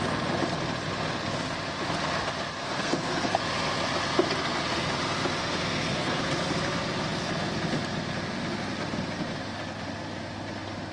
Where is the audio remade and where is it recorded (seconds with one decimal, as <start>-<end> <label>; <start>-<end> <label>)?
0.0-2.6 recorded; 2.6-3.4 remade; 3.4-5.4 recorded; 5.4-6.2 remade; 6.2-10.9 recorded